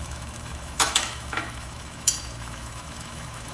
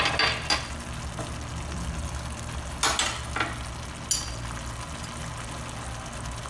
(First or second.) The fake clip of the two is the first